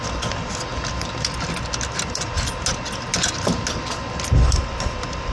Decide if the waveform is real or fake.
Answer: real